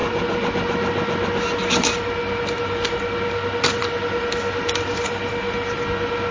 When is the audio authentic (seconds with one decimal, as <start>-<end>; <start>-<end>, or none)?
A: 0.0-6.3